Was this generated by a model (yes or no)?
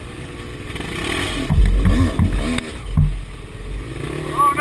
no